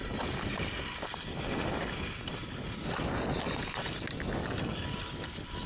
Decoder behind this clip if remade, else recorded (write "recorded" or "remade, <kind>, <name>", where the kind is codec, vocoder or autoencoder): recorded